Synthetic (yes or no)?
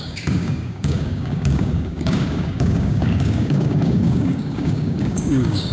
yes